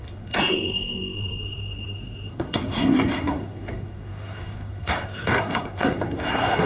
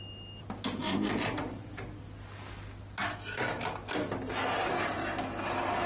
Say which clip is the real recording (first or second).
second